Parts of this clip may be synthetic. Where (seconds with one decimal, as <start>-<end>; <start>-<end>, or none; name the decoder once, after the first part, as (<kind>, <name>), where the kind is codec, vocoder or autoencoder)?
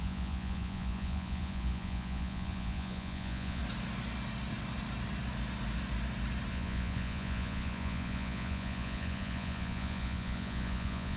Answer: 0.0-3.6 (vocoder, Vocos); 6.5-11.2